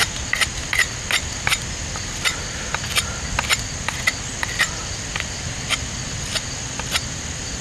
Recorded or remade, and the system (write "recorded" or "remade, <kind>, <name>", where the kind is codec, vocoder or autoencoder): recorded